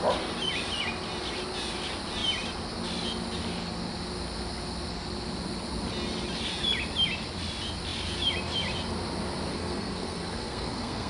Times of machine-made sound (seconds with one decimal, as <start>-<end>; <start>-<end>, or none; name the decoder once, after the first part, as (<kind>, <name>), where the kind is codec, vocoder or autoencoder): 9.5-11.1 (codec, SNAC)